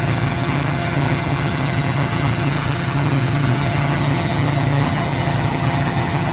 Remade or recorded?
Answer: remade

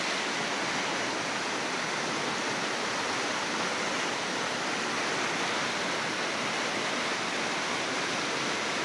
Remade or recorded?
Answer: recorded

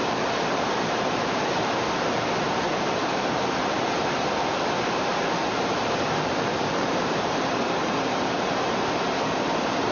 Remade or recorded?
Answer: remade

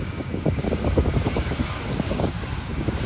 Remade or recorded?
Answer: remade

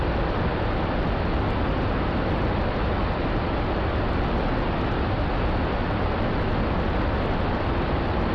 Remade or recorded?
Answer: recorded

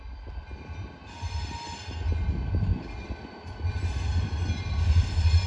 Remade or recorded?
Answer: recorded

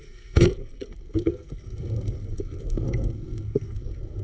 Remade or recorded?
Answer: remade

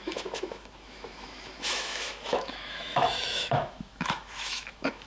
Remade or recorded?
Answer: remade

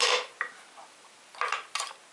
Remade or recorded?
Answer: recorded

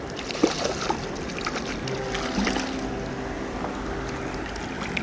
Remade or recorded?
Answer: recorded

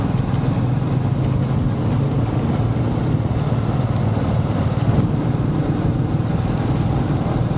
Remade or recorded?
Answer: recorded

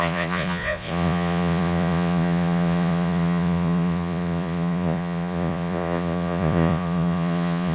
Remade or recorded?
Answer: remade